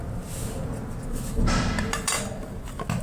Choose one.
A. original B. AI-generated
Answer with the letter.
A